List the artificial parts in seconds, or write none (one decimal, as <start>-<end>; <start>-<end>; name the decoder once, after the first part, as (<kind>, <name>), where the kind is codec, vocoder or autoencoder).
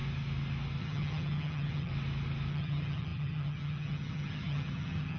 0.8-1.9 (vocoder, HiFi-GAN); 2.5-5.2